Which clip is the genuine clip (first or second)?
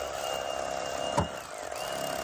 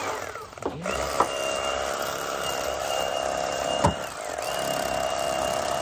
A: first